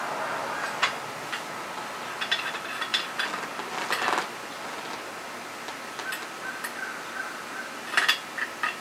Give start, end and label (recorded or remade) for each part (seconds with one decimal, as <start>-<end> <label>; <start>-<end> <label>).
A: 0.0-8.8 recorded